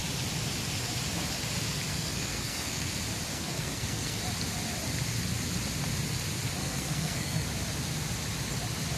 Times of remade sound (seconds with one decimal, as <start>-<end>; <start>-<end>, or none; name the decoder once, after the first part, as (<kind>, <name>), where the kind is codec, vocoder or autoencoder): 1.9-2.9 (codec, SNAC); 3.3-4.2; 6.6-7.5